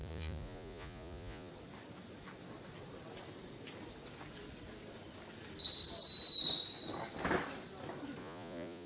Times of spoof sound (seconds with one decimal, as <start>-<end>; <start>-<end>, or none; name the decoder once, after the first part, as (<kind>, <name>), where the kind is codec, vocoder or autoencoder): 0.0-1.5 (vocoder, Vocos); 8.2-8.9